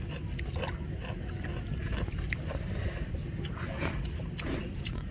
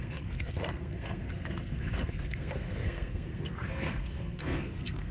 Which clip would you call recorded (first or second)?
first